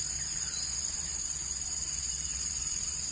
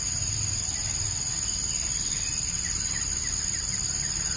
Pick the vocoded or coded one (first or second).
first